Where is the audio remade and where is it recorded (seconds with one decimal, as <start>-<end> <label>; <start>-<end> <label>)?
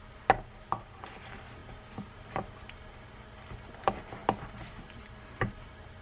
0.0-6.0 recorded